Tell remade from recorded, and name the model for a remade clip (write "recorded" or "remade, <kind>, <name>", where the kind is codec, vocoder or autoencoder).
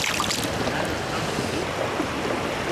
recorded